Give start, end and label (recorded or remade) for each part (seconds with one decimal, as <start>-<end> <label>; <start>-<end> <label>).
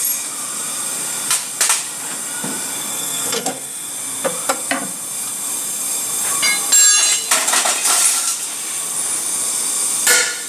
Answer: 0.0-2.9 recorded; 2.9-3.9 remade; 3.9-10.5 recorded